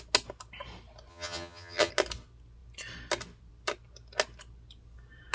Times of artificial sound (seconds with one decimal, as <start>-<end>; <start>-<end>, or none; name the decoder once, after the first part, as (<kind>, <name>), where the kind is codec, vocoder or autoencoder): 1.1-1.9 (vocoder, HiFi-GAN)